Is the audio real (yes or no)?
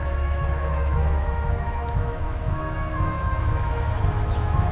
no